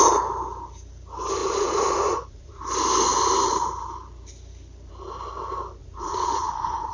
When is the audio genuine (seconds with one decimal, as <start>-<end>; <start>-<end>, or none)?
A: 0.0-1.4; 2.6-5.8